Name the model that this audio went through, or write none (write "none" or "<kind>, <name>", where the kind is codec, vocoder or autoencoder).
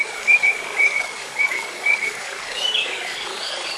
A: codec, DAC